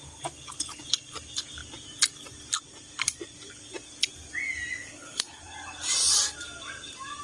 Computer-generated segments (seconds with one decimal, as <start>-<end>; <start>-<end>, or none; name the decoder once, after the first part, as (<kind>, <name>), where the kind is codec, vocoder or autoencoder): 4.8-5.4 (codec, HILCodec)